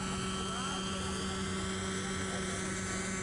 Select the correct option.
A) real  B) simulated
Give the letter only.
A